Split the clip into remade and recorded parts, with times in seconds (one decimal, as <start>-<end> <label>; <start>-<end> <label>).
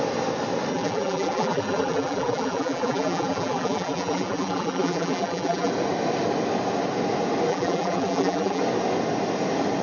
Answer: 0.0-0.7 recorded; 0.7-5.7 remade; 5.7-7.5 recorded; 7.5-8.6 remade; 8.6-9.8 recorded